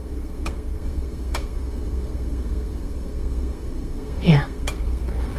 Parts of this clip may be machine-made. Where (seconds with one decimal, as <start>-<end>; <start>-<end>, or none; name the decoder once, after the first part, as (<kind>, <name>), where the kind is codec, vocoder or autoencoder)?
0.0-5.4 (codec, SNAC)